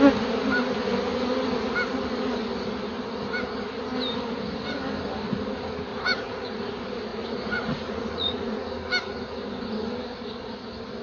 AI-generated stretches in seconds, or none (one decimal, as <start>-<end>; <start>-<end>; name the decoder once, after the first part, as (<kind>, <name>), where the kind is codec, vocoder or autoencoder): 5.9-6.6 (vocoder, Vocos); 7.1-8.6